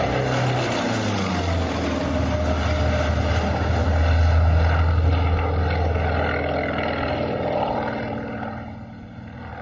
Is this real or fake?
real